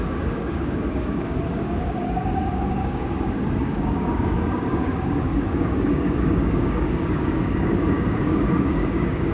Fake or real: fake